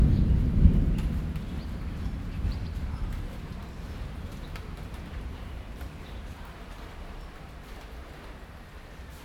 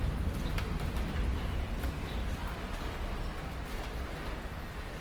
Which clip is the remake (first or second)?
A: first